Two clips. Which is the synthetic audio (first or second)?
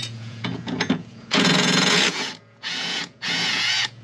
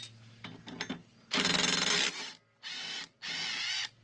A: first